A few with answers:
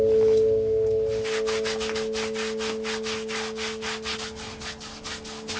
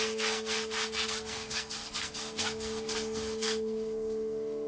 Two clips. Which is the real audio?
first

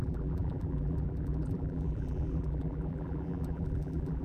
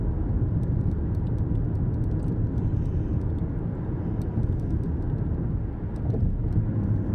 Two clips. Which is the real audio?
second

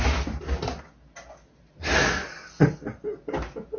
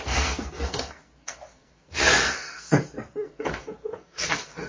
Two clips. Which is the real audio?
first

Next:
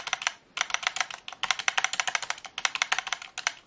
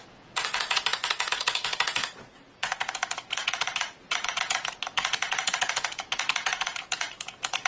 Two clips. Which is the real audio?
first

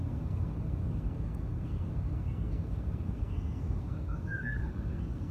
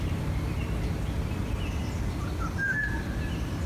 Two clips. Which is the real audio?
second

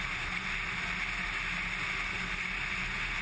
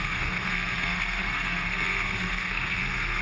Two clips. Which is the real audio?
first